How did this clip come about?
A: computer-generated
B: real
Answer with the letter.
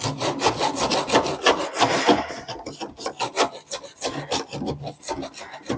B